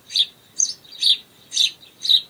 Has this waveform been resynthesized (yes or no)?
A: no